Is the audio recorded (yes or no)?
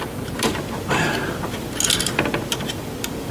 yes